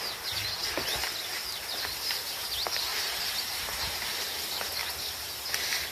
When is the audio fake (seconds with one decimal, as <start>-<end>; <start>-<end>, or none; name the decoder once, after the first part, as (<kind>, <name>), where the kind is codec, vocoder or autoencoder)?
2.9-4.0 (vocoder, BigVGAN v2)